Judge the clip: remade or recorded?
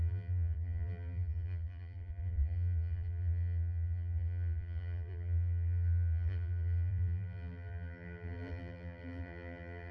remade